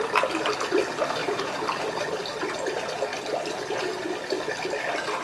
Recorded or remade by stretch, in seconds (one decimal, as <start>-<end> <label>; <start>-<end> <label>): 0.0-1.2 recorded; 1.2-2.0 remade; 2.0-5.2 recorded